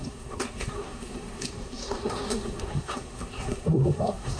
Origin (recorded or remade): remade